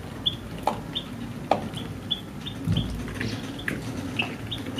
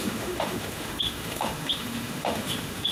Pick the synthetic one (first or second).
second